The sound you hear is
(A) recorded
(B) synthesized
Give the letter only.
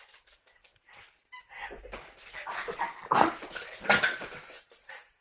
A